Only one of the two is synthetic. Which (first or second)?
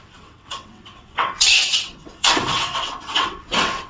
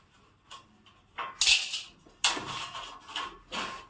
first